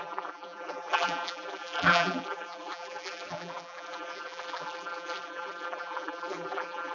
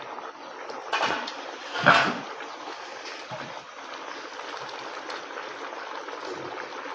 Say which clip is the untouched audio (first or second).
second